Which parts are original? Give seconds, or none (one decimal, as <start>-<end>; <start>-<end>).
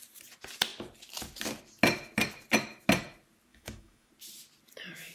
0.0-3.5; 4.1-5.1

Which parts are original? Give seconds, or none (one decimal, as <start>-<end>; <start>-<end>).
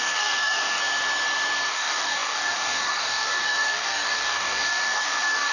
0.8-1.7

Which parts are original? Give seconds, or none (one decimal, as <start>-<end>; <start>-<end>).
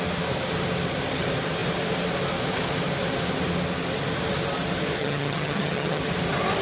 0.0-5.0; 6.0-6.6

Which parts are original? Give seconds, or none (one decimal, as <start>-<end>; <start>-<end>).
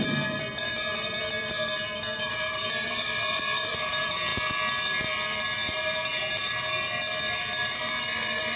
4.3-8.0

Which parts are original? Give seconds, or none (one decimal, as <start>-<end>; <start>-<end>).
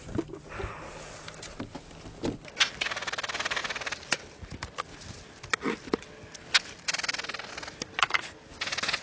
0.0-9.0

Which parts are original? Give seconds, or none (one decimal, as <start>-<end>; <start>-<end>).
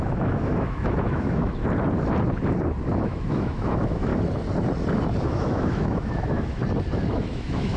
1.6-3.0; 4.1-5.2; 6.6-7.1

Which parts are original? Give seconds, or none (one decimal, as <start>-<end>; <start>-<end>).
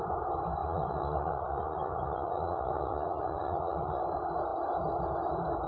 0.0-0.6; 4.0-5.7